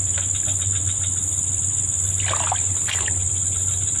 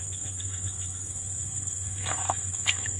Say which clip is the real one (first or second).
first